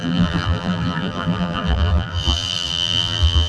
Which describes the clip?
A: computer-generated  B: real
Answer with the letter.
A